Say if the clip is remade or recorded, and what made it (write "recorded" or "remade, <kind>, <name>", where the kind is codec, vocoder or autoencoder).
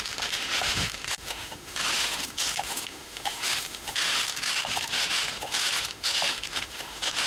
remade, autoencoder, DAC-VAE